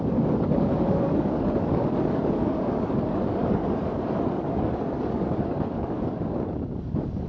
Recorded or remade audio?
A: remade